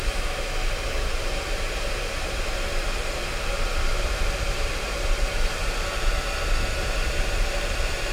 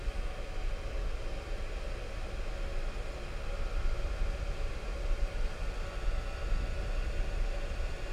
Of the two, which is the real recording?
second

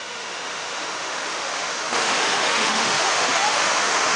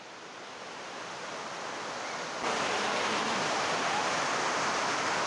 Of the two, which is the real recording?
second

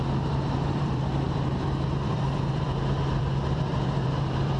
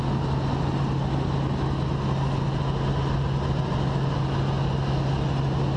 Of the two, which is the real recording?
second